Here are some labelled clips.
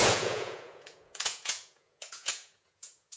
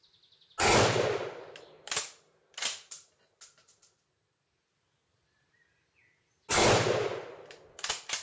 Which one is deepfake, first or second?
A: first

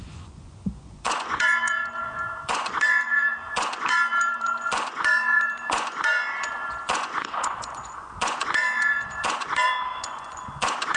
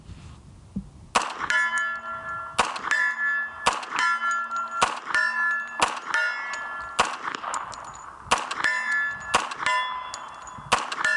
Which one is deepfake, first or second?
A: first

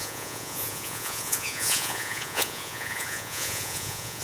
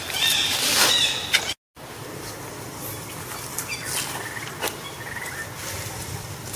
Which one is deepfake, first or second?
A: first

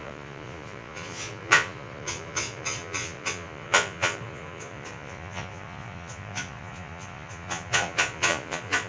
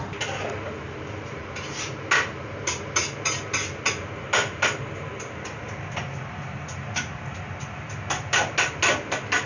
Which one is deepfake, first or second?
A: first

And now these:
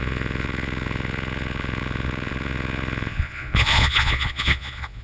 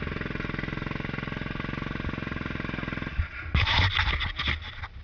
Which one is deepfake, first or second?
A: first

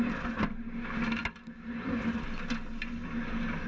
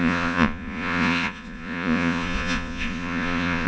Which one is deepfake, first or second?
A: second